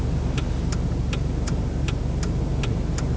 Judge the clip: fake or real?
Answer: real